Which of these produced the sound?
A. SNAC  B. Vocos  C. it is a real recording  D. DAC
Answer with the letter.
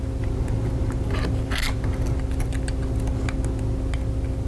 C